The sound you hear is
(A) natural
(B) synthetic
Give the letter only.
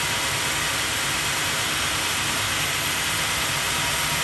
A